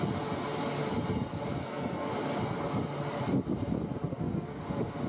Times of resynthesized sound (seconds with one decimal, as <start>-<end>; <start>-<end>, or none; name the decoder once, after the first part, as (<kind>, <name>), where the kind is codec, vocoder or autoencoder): 1.6-2.1 (codec, SNAC); 4.1-4.6